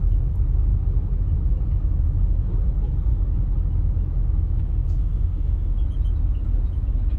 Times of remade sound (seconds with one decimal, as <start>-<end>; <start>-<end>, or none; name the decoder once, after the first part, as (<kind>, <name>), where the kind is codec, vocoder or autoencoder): 5.0-5.7 (autoencoder, DAC-VAE)